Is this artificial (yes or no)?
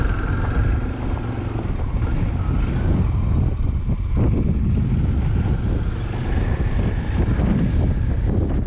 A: no